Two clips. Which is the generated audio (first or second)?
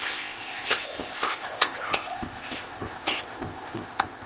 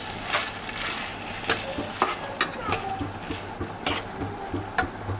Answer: first